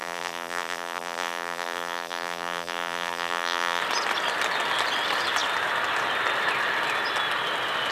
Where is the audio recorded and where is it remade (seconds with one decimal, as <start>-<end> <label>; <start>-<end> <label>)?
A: 0.0-3.8 remade; 3.8-7.9 recorded